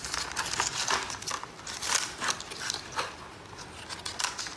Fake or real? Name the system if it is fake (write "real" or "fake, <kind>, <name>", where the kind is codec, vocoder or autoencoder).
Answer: real